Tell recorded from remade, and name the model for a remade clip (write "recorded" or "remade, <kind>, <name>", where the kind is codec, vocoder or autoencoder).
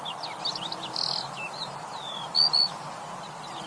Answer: recorded